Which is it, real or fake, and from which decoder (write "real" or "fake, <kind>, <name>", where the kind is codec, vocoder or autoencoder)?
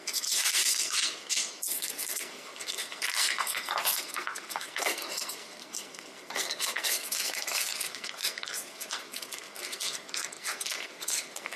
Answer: fake, codec, SNAC